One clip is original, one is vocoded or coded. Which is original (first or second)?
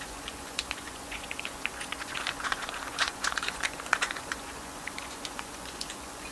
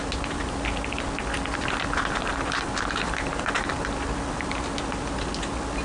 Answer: second